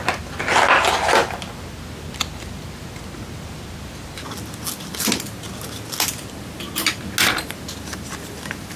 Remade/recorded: recorded